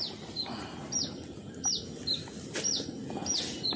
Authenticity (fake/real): real